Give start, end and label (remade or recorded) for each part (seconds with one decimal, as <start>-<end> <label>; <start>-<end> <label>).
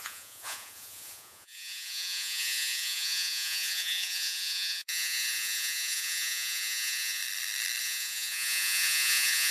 0.0-7.2 remade; 7.2-7.8 recorded; 7.8-9.5 remade